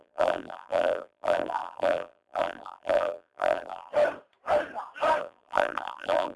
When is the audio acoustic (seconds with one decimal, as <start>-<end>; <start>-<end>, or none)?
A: 3.9-5.2